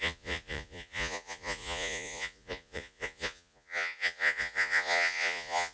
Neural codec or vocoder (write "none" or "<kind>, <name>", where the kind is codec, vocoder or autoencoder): vocoder, Vocos